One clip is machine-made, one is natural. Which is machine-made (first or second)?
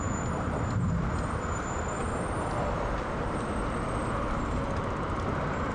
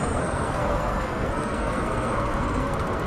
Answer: second